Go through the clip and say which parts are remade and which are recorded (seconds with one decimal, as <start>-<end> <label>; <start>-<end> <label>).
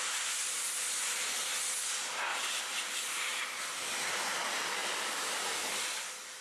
0.0-2.3 recorded; 2.3-4.0 remade; 4.0-4.8 recorded; 4.8-5.4 remade; 5.4-6.4 recorded